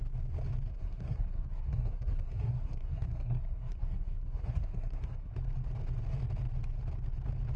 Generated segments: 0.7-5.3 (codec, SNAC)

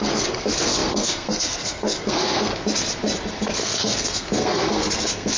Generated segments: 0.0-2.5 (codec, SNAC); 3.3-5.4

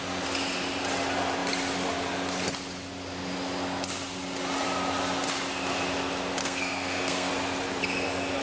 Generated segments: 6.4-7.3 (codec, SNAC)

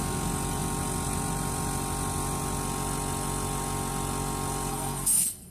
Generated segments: 4.7-5.5 (codec, SNAC)